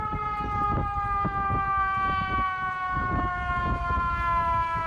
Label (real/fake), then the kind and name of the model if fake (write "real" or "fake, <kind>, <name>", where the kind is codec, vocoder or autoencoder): fake, vocoder, BigVGAN v2